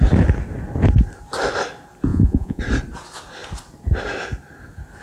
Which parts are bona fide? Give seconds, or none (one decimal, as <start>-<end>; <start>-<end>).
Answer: 0.0-2.1; 2.6-5.0